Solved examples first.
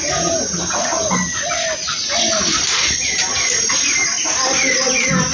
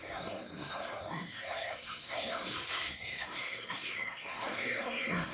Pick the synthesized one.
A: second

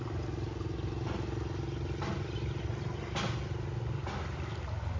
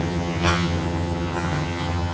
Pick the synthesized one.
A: second